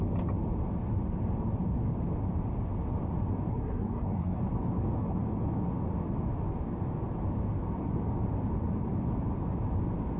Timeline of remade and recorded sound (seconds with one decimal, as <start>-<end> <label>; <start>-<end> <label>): 0.0-3.5 recorded; 3.5-4.4 remade; 4.4-10.2 recorded